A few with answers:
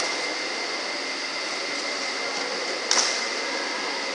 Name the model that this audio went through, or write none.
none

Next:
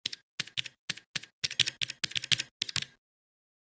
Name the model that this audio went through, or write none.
none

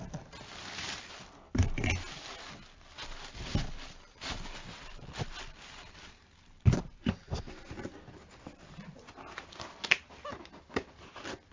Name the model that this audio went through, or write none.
none